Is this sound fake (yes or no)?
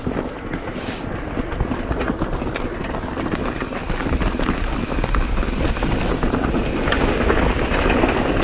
no